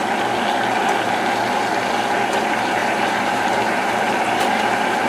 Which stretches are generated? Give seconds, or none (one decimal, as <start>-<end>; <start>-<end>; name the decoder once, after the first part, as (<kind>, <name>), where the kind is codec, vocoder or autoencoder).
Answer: 2.8-4.0 (vocoder, BigVGAN v2)